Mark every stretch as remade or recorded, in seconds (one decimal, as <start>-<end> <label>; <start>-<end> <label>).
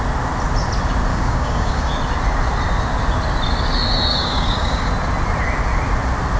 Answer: 0.0-1.1 recorded; 1.1-1.9 remade; 1.9-4.1 recorded; 4.1-4.9 remade; 4.9-6.4 recorded